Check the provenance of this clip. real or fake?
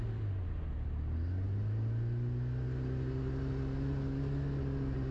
real